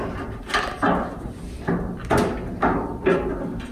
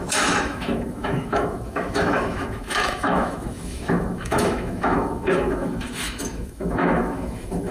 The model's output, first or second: second